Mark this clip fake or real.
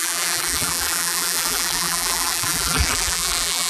fake